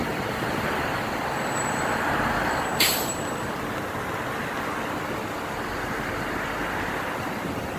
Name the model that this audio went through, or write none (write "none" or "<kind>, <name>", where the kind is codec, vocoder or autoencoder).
none